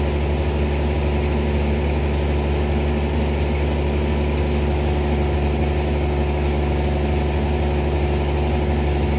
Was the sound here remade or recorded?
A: recorded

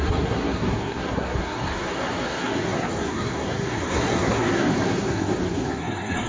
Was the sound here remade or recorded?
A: remade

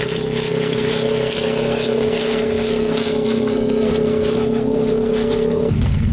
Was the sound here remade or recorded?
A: remade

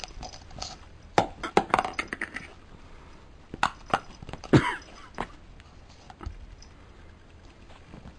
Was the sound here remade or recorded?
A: recorded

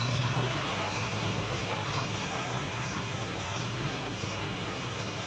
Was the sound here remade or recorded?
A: remade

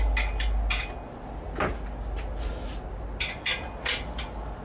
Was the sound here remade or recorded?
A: recorded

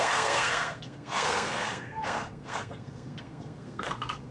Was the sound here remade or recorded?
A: remade